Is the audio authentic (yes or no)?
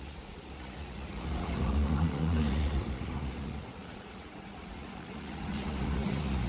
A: no